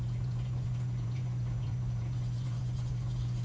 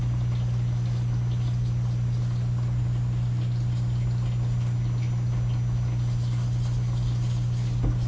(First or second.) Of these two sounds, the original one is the second